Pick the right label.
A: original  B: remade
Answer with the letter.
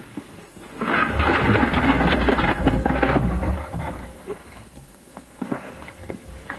B